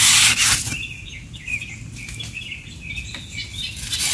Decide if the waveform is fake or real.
real